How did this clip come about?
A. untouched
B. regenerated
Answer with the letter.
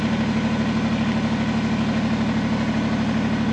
A